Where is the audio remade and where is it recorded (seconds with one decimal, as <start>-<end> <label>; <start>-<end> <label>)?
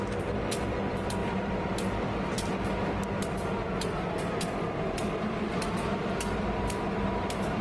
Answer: 0.0-7.6 remade